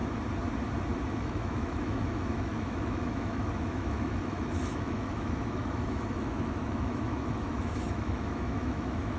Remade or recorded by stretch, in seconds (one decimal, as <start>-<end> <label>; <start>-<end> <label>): 0.0-1.0 recorded; 1.0-9.2 remade